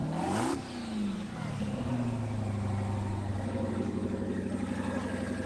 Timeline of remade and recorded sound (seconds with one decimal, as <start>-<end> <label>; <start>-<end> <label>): 0.0-0.6 remade; 0.6-1.3 recorded; 1.3-1.9 remade; 1.9-3.3 recorded; 3.3-4.4 remade; 4.4-5.5 recorded